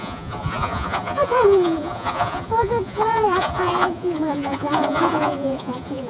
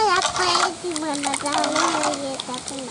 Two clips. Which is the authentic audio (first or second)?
second